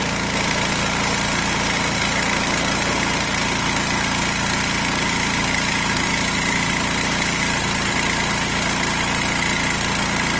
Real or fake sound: real